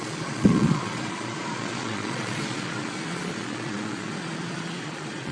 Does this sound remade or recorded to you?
remade